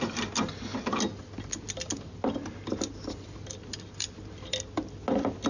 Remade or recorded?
recorded